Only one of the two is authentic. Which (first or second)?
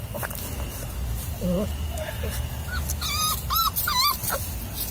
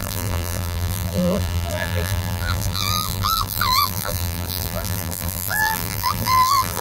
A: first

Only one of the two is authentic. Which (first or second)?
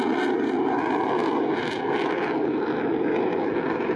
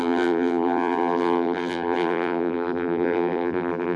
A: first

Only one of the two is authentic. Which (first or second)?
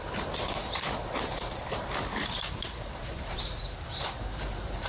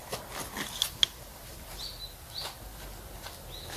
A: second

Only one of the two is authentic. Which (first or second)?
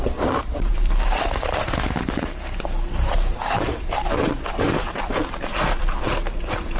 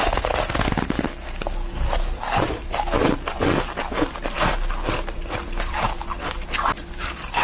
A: second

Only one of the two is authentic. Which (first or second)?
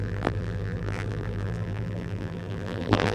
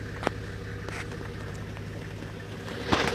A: second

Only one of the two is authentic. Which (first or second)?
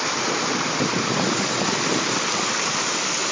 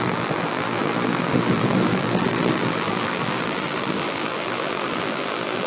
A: first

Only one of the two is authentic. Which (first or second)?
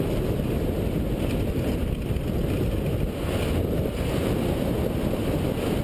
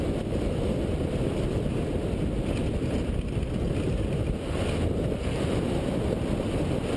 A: first